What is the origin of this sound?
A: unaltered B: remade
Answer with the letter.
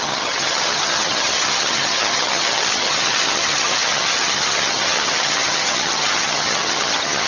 B